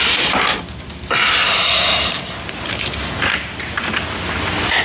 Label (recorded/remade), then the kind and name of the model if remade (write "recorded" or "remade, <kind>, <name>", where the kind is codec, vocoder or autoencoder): recorded